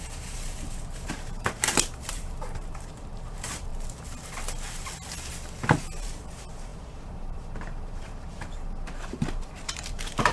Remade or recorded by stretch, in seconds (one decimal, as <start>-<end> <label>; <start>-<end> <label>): 0.0-3.7 remade; 3.7-6.0 recorded; 6.0-10.3 remade

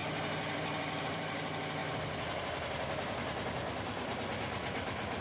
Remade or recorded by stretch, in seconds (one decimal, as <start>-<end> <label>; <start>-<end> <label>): 0.0-1.0 recorded; 1.0-1.8 remade; 1.8-5.2 recorded

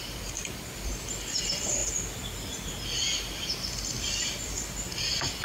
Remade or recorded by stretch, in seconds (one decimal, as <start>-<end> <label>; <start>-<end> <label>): 0.0-1.8 remade; 1.8-5.0 recorded; 5.0-5.4 remade